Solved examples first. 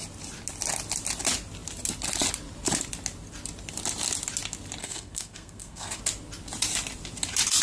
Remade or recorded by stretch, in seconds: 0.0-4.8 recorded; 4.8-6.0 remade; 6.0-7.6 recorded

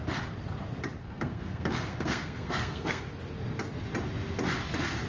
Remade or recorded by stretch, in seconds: 0.0-1.0 recorded; 1.0-3.0 remade; 3.0-5.1 recorded

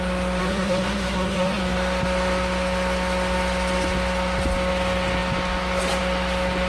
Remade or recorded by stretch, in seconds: 0.0-0.4 recorded; 0.4-1.6 remade; 1.6-6.7 recorded

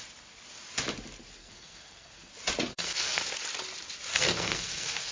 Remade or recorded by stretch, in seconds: 0.0-1.4 recorded; 1.4-2.3 remade; 2.3-2.7 recorded; 2.7-3.2 remade; 3.2-4.1 recorded; 4.1-5.1 remade